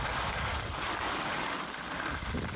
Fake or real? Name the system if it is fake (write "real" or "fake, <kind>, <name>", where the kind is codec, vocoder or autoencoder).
real